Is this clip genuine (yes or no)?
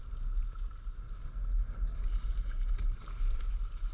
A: yes